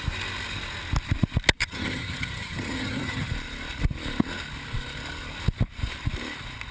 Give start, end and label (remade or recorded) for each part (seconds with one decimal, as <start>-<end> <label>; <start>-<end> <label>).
0.0-1.6 recorded; 1.6-3.3 remade; 3.3-6.7 recorded